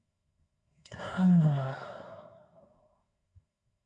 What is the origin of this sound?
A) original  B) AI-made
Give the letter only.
B